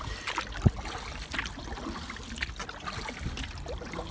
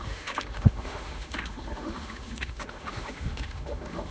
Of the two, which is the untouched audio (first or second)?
first